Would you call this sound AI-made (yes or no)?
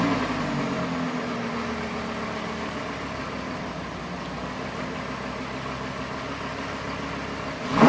no